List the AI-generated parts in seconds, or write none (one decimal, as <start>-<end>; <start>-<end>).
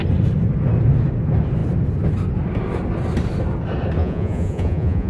4.0-5.1